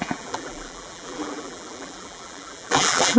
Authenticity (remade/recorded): remade